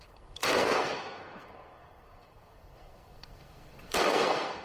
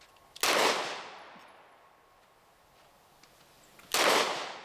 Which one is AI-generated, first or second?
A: first